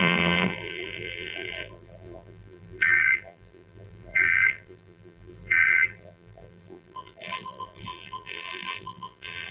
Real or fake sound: fake